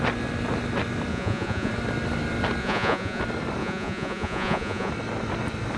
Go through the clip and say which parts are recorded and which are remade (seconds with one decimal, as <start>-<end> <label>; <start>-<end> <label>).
0.0-1.1 recorded; 1.1-1.7 remade; 1.7-2.6 recorded; 2.6-3.2 remade; 3.2-3.6 recorded; 3.6-4.9 remade; 4.9-5.8 recorded